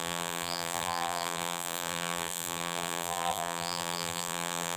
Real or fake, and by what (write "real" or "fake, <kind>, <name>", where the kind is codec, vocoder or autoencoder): fake, vocoder, BigVGAN v2